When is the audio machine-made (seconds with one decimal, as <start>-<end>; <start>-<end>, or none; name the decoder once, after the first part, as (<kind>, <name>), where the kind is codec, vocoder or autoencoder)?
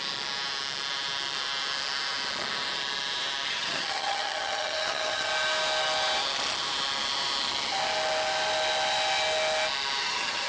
3.5-5.3 (vocoder, HiFi-GAN); 10.0-10.5